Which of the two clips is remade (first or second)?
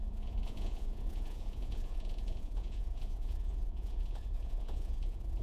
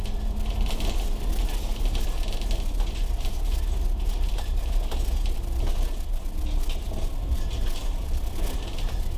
first